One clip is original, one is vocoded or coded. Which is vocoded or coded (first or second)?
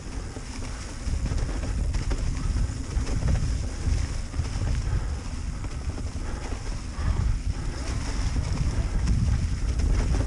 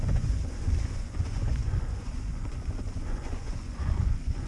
second